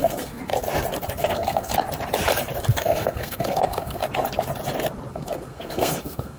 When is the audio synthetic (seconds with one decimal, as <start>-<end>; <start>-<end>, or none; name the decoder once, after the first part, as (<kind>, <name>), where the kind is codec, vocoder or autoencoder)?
0.0-0.5 (codec, SNAC); 1.2-1.7; 2.7-4.0; 5.1-6.4